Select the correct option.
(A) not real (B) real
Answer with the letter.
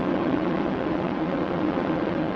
A